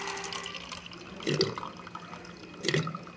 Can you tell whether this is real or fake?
real